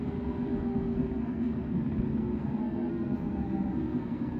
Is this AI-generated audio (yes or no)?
yes